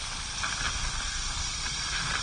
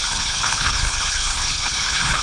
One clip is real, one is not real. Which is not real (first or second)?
second